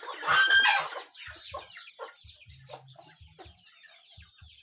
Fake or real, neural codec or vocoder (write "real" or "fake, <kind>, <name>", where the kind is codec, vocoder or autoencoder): real